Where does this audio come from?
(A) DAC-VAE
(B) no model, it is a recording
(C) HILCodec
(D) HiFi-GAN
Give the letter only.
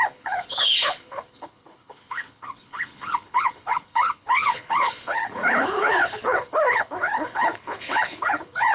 C